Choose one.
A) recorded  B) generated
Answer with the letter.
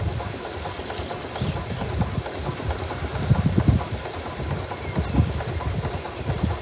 A